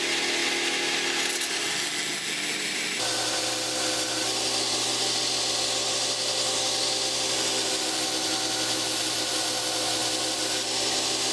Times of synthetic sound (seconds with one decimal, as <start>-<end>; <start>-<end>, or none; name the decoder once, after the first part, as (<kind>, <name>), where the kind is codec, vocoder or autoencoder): none